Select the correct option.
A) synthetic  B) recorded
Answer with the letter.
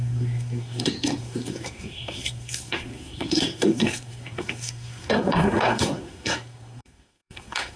A